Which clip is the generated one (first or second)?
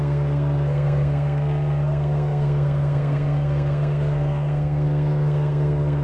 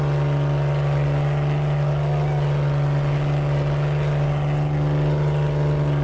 first